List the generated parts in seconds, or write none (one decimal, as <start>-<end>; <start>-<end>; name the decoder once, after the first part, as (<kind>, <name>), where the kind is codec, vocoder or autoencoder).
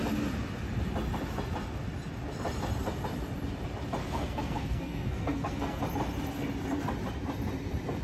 4.0-5.8 (codec, SNAC)